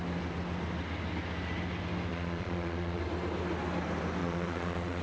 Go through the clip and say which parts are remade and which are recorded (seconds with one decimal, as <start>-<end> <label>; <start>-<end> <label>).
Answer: 0.0-2.1 recorded; 2.1-3.0 remade; 3.0-4.2 recorded; 4.2-5.0 remade